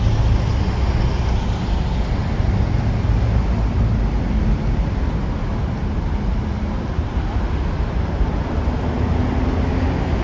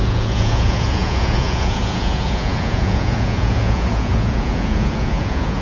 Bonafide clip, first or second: first